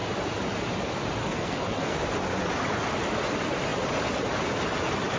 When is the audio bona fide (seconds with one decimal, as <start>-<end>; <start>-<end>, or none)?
0.0-1.2; 2.0-5.2